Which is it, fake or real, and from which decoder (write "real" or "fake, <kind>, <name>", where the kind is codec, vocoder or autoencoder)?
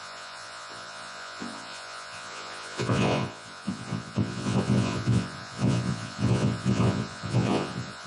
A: fake, vocoder, Vocos